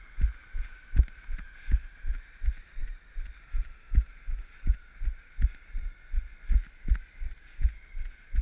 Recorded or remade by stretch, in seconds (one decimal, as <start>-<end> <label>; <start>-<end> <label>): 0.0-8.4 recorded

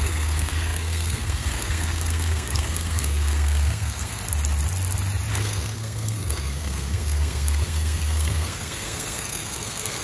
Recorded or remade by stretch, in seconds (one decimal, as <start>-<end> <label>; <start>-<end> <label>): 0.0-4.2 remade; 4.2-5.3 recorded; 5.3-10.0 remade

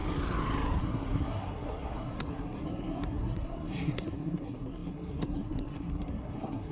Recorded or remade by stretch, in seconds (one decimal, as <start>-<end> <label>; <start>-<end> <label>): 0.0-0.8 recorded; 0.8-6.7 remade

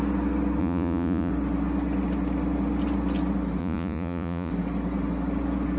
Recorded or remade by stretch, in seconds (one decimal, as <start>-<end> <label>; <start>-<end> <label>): 0.0-0.6 recorded; 0.6-1.3 remade; 1.3-3.6 recorded; 3.6-4.5 remade; 4.5-5.8 recorded

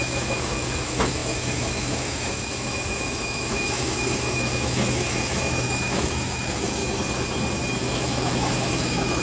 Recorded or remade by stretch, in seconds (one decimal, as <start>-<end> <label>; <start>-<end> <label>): 0.0-6.8 remade; 6.8-7.8 recorded; 7.8-9.2 remade